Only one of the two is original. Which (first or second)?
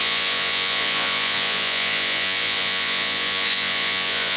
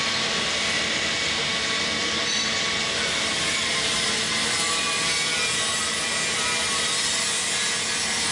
second